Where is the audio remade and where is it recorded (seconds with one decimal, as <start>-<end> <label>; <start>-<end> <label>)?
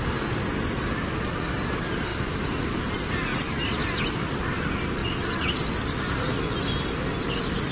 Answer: 0.0-7.7 recorded